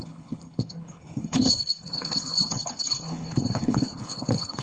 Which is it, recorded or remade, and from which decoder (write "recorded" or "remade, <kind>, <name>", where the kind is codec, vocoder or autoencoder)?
remade, codec, HILCodec